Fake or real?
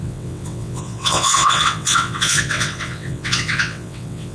fake